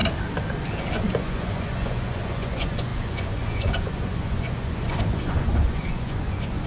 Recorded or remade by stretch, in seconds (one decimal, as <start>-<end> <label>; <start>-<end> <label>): 0.0-0.9 recorded; 0.9-6.7 remade